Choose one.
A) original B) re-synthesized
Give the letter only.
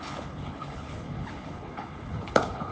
B